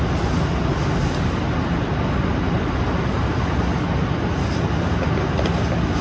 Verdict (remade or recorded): recorded